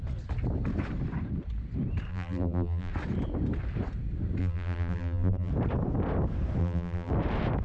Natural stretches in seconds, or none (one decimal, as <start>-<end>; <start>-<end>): 0.0-2.1; 2.9-4.4; 5.5-6.6; 7.1-7.6